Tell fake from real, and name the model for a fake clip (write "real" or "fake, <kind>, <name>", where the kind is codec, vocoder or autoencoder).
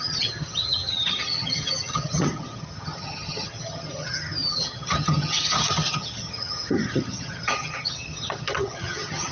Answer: fake, vocoder, HiFi-GAN